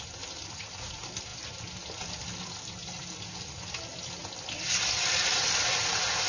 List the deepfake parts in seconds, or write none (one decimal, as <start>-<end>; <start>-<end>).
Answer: none